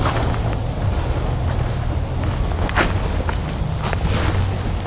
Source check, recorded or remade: recorded